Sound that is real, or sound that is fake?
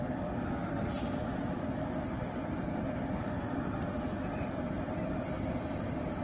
real